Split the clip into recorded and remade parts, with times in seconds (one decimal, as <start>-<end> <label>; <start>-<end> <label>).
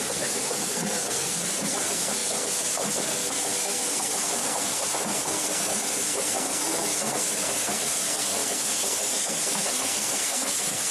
0.0-10.9 remade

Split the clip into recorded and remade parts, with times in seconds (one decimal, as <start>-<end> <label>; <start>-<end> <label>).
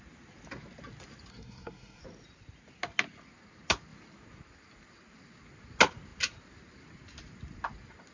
0.0-1.3 recorded; 1.3-2.0 remade; 2.0-8.1 recorded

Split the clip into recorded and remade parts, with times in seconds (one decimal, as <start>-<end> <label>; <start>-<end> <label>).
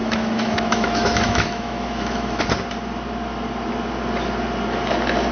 0.0-2.4 remade; 2.4-5.3 recorded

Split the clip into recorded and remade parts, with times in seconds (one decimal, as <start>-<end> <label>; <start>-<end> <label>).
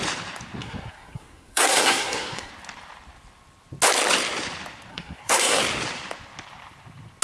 0.0-0.6 recorded; 0.6-2.5 remade; 2.5-4.9 recorded; 4.9-5.6 remade; 5.6-7.2 recorded